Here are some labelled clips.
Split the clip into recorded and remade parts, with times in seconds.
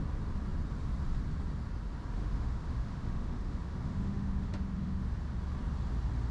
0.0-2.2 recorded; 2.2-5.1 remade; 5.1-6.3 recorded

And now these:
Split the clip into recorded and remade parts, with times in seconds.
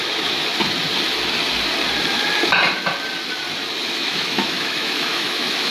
0.0-0.5 remade; 0.5-3.9 recorded; 3.9-5.7 remade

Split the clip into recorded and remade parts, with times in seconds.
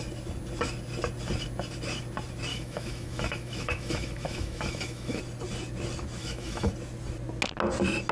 0.0-2.5 recorded; 2.5-5.2 remade; 5.2-6.2 recorded; 6.2-6.7 remade; 6.7-8.1 recorded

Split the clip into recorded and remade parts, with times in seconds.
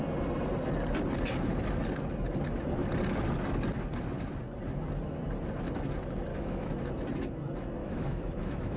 0.0-6.3 recorded; 6.3-6.9 remade; 6.9-7.8 recorded; 7.8-8.8 remade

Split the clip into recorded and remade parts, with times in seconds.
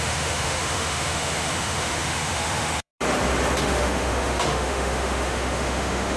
0.0-2.9 remade; 2.9-3.6 recorded; 3.6-6.2 remade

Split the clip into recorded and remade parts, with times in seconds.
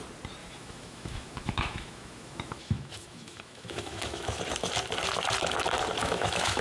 0.0-0.4 recorded; 0.4-4.4 remade; 4.4-6.0 recorded; 6.0-6.6 remade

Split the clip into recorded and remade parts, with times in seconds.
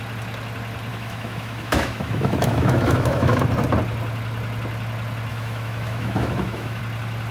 0.0-0.9 recorded; 0.9-3.4 remade; 3.4-5.3 recorded; 5.3-6.8 remade; 6.8-7.3 recorded